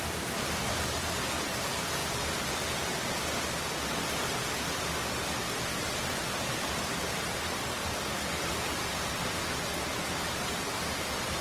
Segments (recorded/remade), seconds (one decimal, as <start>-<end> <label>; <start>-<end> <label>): 0.0-11.4 recorded